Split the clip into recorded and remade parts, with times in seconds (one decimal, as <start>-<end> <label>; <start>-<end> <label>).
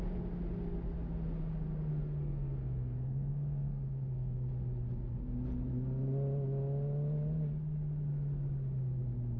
0.0-1.9 recorded; 1.9-4.5 remade; 4.5-9.4 recorded